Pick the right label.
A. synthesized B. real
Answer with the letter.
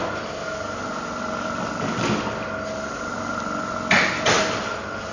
B